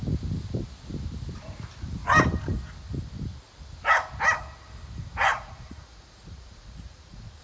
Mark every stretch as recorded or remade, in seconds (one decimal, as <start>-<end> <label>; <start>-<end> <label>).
0.0-5.3 recorded; 5.3-7.4 remade